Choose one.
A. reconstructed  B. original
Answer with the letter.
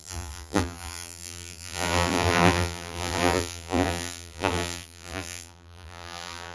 A